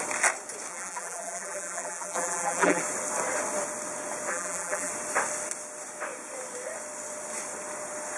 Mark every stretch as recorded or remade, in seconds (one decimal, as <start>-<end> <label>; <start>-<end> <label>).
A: 0.0-0.7 recorded; 0.7-2.8 remade; 2.8-4.3 recorded; 4.3-4.9 remade; 4.9-8.2 recorded